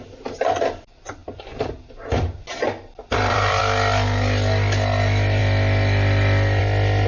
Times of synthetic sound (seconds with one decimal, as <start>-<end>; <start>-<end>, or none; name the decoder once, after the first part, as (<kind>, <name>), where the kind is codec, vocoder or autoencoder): 1.2-2.5 (vocoder, BigVGAN v2); 3.0-3.6; 5.4-6.6